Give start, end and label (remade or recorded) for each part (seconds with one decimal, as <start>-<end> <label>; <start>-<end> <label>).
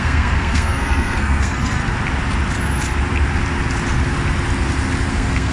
0.0-1.8 remade; 1.8-5.1 recorded; 5.1-5.5 remade